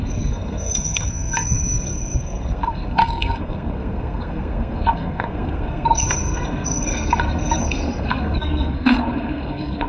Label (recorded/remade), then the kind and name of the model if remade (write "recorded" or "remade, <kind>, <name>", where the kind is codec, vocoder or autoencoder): remade, codec, SNAC